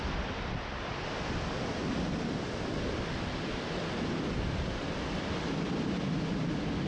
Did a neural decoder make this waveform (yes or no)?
no